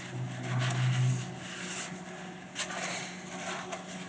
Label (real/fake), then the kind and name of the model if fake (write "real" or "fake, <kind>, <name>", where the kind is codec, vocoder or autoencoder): real